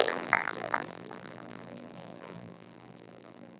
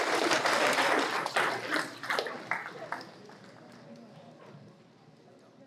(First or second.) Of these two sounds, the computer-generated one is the first